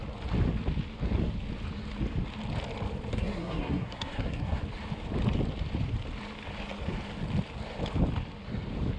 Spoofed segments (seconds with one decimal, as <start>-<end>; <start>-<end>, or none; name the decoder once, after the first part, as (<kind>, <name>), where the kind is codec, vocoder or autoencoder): 3.1-4.6 (codec, SNAC)